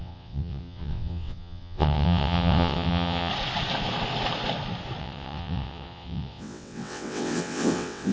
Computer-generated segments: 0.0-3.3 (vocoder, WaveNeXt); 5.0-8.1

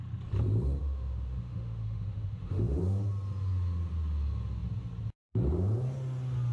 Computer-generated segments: 0.8-2.8 (autoencoder, DAC-VAE)

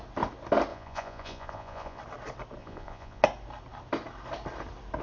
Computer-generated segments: 0.7-2.0 (vocoder, Vocos); 2.6-3.2

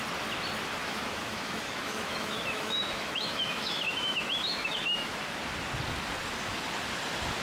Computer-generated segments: 0.8-5.2 (autoencoder, DAC-VAE)

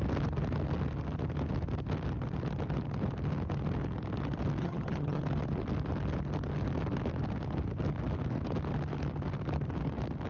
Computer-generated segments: 4.6-5.2 (vocoder, HiFi-GAN)

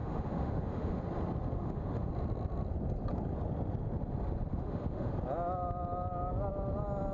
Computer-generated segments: 0.0-1.0 (autoencoder, DAC-VAE); 1.6-2.1; 4.5-5.1

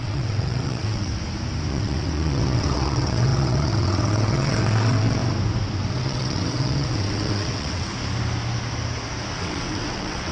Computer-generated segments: 0.0-1.1 (vocoder, WaveNeXt); 1.7-5.2; 6.0-7.9; 9.4-10.3